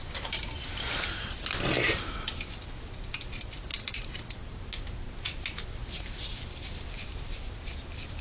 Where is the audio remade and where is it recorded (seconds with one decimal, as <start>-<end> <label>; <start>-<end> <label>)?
0.0-3.7 recorded; 3.7-4.4 remade; 4.4-8.2 recorded